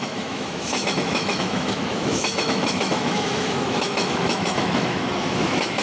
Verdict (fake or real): fake